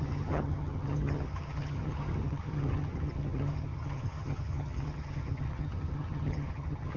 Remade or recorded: remade